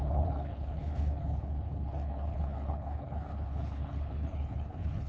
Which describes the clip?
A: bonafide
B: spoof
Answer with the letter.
B